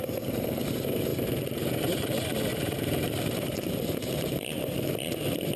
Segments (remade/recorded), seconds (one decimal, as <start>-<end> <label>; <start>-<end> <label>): 0.0-5.6 remade